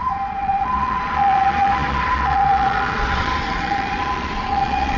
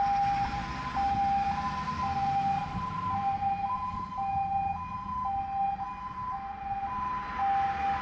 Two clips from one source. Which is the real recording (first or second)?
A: second